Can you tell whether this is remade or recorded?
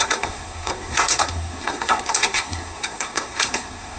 remade